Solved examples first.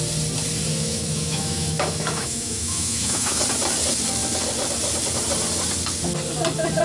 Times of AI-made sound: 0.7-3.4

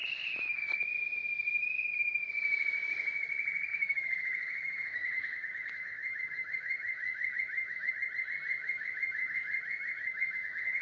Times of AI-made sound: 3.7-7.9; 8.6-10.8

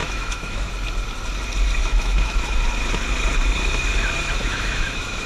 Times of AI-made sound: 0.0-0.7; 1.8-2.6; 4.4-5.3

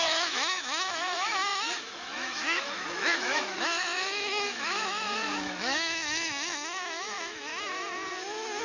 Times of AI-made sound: 0.0-7.5

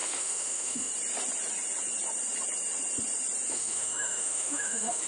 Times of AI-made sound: 0.0-0.9; 3.5-5.1

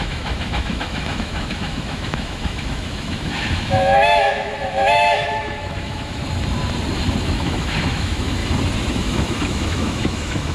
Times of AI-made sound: 0.0-6.2; 7.2-8.4; 8.9-10.5

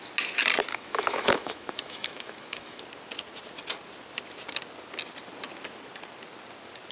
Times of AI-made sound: 0.7-2.8

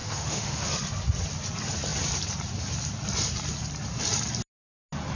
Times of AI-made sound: 0.0-0.7